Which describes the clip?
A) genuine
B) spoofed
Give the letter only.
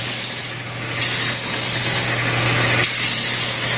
A